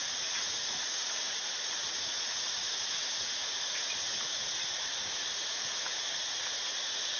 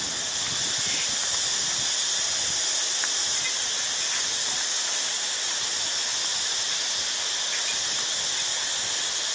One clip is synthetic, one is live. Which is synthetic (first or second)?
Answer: first